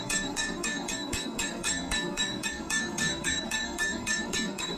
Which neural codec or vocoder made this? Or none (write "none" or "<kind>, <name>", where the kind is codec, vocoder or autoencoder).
codec, SNAC